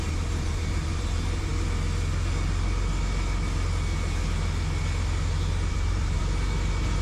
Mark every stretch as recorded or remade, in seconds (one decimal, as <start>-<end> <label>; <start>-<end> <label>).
0.0-1.5 remade; 1.5-5.7 recorded; 5.7-6.2 remade; 6.2-7.0 recorded